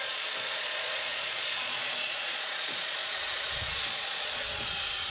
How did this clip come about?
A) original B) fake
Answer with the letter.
B